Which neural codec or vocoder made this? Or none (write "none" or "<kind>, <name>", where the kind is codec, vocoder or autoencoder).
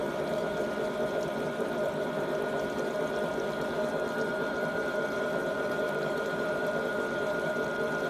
vocoder, BigVGAN v2